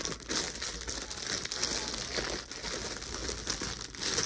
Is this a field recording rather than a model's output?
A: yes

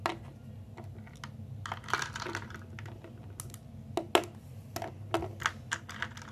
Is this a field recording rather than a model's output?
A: yes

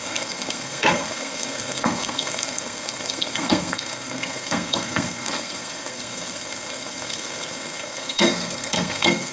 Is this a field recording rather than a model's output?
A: no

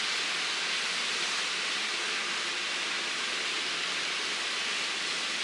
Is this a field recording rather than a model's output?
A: yes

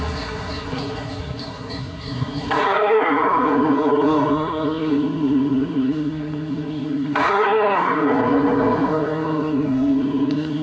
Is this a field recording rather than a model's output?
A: no